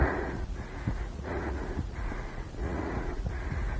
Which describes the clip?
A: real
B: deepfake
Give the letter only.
B